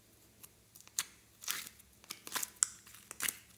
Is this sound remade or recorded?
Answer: recorded